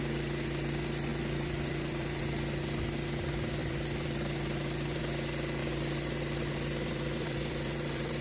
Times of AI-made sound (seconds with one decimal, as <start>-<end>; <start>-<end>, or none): 1.1-2.2; 3.6-5.0; 5.6-8.2